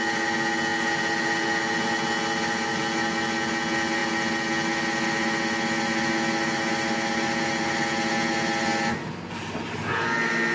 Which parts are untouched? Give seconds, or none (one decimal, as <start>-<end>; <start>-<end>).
0.0-10.5